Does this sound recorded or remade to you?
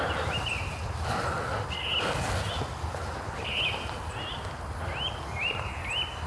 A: recorded